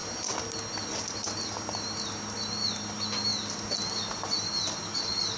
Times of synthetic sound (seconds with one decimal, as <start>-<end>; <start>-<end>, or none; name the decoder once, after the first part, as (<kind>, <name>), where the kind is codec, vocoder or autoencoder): none